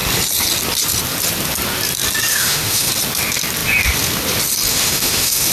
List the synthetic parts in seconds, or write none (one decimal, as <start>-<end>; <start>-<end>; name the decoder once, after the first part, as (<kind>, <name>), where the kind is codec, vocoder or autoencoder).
2.3-2.9 (autoencoder, DAC-VAE); 4.7-5.5